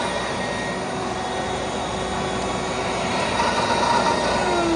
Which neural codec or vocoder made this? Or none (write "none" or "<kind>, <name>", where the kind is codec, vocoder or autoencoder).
none